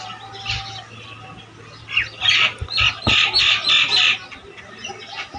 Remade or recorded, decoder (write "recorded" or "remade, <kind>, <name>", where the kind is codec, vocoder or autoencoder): recorded